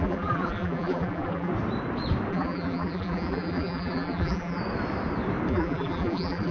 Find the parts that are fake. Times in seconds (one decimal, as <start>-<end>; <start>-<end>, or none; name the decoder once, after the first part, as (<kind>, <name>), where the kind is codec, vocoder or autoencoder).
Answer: 0.0-1.5 (vocoder, BigVGAN v2); 2.3-4.6; 5.5-6.5